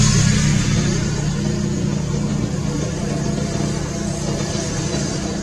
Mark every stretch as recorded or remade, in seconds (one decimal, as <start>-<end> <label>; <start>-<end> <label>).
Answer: 0.0-5.4 recorded